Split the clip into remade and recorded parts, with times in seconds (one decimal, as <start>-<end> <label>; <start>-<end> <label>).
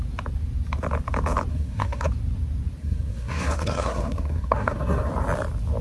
0.0-1.5 recorded; 1.5-2.1 remade; 2.1-2.8 recorded; 2.8-5.1 remade; 5.1-5.8 recorded